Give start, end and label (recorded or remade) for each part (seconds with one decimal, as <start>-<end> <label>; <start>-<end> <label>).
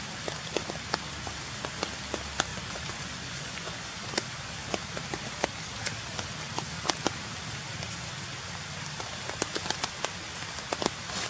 0.0-2.5 recorded; 2.5-4.5 remade; 4.5-11.3 recorded